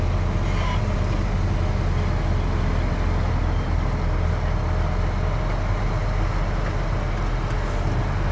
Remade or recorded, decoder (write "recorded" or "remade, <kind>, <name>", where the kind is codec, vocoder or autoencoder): recorded